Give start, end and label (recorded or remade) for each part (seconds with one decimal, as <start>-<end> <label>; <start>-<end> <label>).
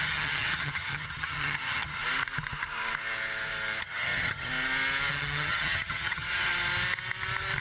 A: 0.0-2.0 remade; 2.0-3.8 recorded; 3.8-4.5 remade; 4.5-5.1 recorded; 5.1-6.5 remade; 6.5-7.6 recorded